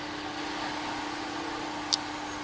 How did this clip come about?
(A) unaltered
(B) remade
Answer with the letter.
A